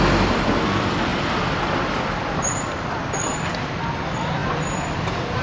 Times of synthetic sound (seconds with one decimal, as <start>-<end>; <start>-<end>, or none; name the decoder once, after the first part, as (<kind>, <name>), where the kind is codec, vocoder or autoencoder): 0.0-5.4 (vocoder, BigVGAN v2)